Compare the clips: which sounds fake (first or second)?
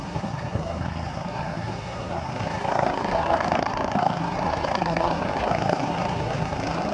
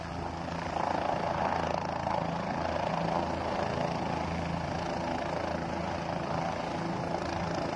first